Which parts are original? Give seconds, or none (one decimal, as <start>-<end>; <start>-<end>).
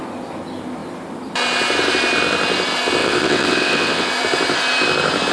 0.0-3.0; 4.1-5.3